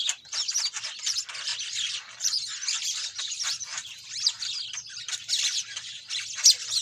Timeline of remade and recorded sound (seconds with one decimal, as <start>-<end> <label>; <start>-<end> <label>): 0.0-1.5 recorded; 1.5-3.2 remade; 3.2-6.8 recorded